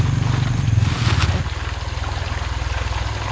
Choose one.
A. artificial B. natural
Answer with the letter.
B